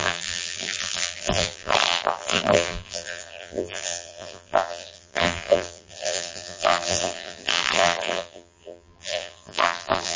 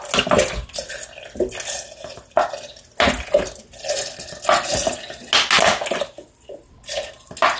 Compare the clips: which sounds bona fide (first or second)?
second